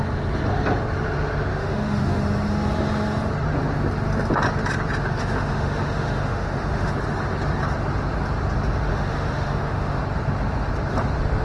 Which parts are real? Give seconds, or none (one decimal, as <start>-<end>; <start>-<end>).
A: 0.0-1.5; 2.2-5.0; 6.9-8.9; 10.0-11.4